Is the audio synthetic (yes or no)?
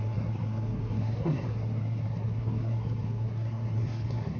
yes